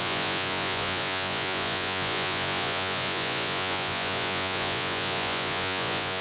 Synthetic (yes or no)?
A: yes